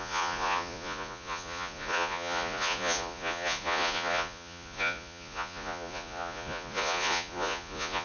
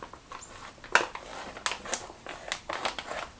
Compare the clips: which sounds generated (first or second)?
first